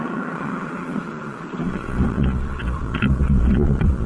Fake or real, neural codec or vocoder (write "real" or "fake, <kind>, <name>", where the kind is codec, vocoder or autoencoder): fake, vocoder, Vocos